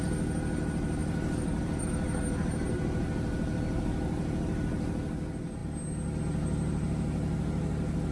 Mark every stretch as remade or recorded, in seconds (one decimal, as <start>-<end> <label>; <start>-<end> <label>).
0.0-1.0 recorded; 1.0-1.8 remade; 1.8-8.1 recorded